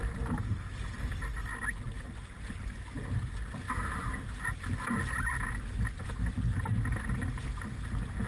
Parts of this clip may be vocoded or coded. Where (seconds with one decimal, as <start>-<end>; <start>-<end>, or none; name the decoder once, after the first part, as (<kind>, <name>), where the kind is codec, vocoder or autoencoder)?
none